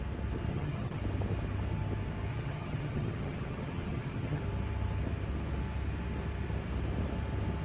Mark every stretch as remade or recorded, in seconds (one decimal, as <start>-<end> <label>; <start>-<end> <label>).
0.0-0.5 recorded; 0.5-1.0 remade; 1.0-2.3 recorded; 2.3-4.4 remade; 4.4-7.6 recorded